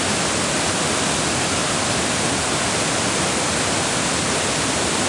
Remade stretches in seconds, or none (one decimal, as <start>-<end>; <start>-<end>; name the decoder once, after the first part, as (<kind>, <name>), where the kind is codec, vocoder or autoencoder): none